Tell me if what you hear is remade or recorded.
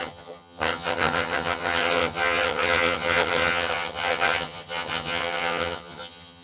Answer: remade